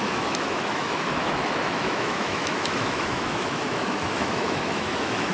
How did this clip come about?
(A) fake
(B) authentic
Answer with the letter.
A